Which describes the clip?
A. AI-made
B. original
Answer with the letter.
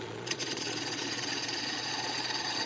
A